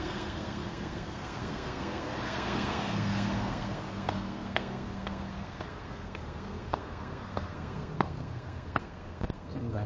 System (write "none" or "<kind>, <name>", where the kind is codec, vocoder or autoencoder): codec, SNAC